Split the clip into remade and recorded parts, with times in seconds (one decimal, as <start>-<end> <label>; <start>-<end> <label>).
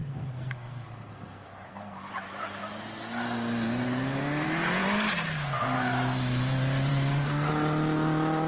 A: 0.0-2.1 remade; 2.1-6.9 recorded; 6.9-7.5 remade; 7.5-8.5 recorded